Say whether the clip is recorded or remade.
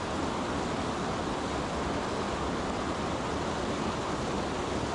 recorded